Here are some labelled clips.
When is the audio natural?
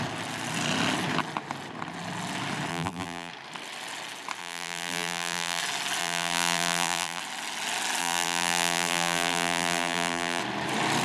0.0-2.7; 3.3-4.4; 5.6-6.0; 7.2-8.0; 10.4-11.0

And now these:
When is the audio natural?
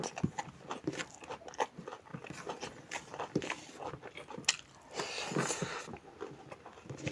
0.0-7.1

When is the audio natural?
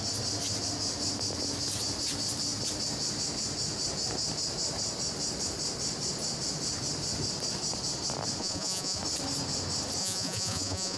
0.0-8.4; 9.0-10.0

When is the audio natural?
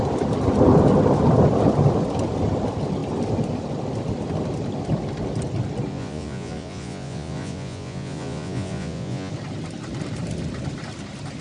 0.0-5.9; 9.3-11.4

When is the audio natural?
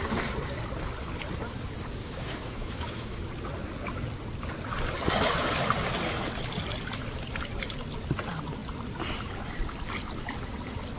0.0-2.0; 3.2-11.0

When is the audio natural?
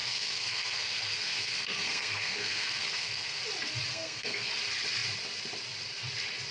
3.4-3.9; 4.5-6.5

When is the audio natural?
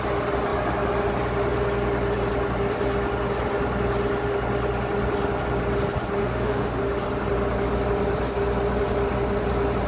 0.0-6.2; 6.8-9.9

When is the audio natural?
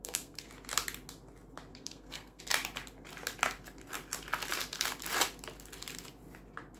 0.5-1.7; 2.4-6.8